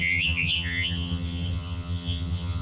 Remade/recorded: remade